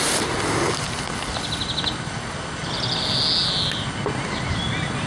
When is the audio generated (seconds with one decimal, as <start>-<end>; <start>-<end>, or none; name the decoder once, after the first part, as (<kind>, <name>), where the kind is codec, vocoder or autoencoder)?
none